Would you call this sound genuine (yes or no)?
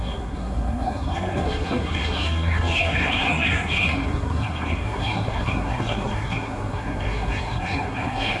no